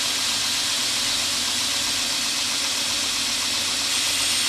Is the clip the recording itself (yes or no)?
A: yes